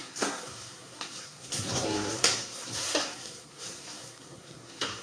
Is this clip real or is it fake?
fake